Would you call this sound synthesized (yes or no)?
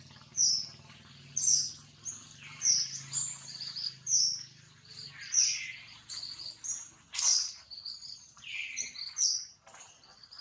no